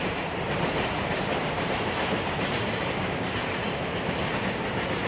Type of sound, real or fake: fake